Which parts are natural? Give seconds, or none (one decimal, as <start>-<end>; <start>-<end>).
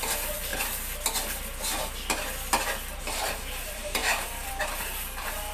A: 0.5-3.0